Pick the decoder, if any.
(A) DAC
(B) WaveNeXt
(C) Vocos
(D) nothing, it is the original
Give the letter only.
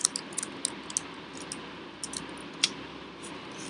D